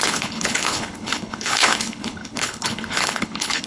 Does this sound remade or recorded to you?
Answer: remade